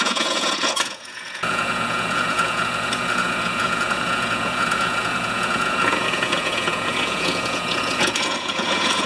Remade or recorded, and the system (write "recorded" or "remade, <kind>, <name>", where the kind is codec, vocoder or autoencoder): remade, vocoder, Vocos